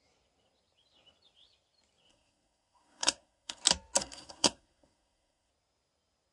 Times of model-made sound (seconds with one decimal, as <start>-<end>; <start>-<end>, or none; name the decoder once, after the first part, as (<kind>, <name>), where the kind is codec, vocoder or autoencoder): 2.1-3.6 (codec, SNAC); 4.0-5.5